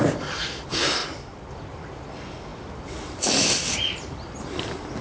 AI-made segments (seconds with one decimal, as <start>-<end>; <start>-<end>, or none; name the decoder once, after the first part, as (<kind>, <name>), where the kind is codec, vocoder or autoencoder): none